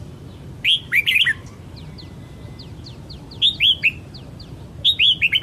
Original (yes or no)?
yes